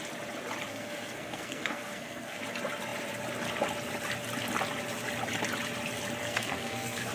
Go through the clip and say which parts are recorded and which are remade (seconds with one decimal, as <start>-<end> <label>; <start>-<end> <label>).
0.0-0.7 recorded; 0.7-2.4 remade; 2.4-6.2 recorded; 6.2-7.1 remade